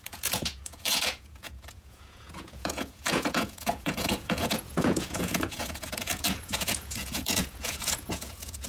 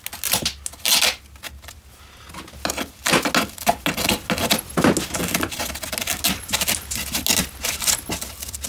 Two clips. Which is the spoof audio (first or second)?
first